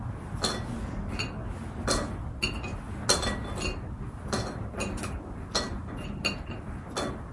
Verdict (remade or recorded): recorded